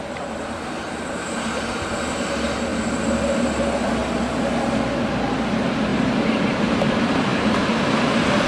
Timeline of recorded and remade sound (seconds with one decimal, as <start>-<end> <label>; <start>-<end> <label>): 0.0-4.0 remade; 4.0-5.0 recorded; 5.0-8.5 remade